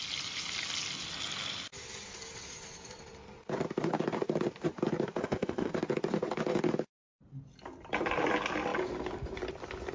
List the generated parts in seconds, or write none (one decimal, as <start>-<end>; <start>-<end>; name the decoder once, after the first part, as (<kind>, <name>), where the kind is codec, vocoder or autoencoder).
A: 5.2-5.7 (codec, ZipCodec)

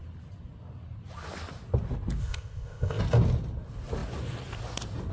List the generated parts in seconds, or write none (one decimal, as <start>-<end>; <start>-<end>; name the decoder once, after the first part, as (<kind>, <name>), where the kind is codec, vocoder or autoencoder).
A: 2.2-3.0 (codec, ZipCodec)

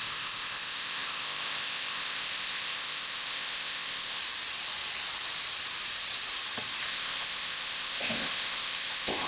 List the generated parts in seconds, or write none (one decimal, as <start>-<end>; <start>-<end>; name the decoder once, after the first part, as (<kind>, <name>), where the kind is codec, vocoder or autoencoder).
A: 0.0-4.2 (codec, ZipCodec); 6.9-9.3

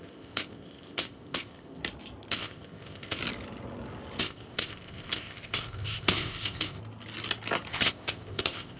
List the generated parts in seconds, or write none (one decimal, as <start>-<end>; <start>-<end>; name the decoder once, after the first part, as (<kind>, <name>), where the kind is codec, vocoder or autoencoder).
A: 0.0-1.8 (codec, ZipCodec); 2.3-3.2; 4.2-6.8; 7.7-8.8

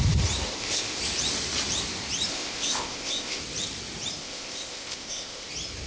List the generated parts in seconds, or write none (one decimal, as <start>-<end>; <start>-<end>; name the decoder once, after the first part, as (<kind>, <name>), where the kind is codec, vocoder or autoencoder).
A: 0.5-1.0 (codec, ZipCodec); 2.3-3.4; 4.2-5.5

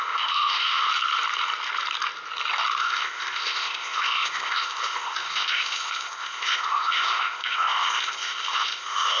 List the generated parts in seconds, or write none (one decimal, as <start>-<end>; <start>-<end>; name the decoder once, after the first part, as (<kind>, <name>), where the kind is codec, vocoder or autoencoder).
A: 0.0-0.9 (codec, ZipCodec); 2.8-9.2